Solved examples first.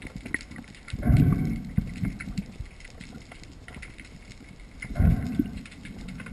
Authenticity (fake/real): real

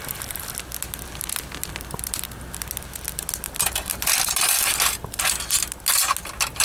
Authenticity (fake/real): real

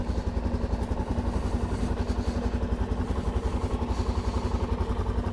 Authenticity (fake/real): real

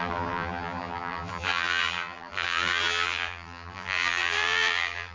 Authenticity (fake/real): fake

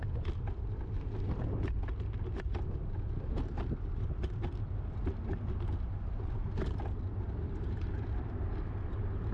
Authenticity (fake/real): fake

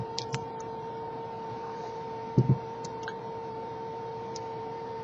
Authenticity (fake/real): fake